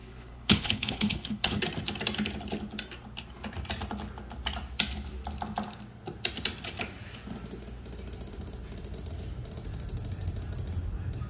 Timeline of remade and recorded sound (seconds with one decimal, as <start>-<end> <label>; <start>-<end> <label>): 0.0-1.6 remade; 1.6-11.3 recorded